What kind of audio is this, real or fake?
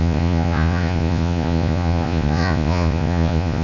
fake